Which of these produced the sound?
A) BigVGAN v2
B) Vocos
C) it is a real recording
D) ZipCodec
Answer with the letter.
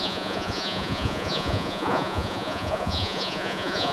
B